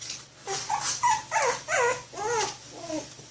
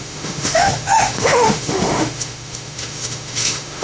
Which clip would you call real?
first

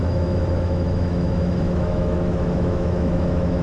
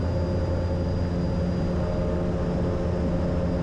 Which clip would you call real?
second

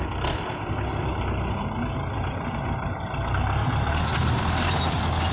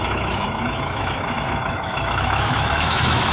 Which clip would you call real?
first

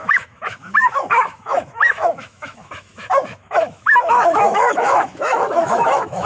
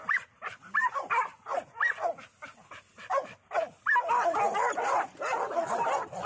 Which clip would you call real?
second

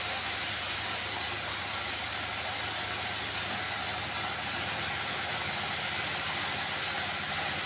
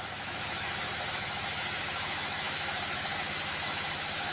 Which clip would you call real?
first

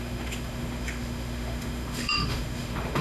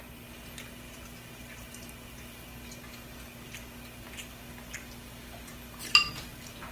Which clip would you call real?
second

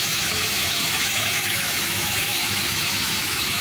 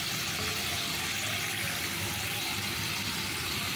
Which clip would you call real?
second